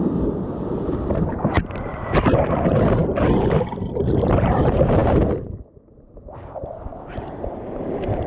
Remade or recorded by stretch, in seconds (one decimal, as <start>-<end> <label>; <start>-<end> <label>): 0.0-8.3 remade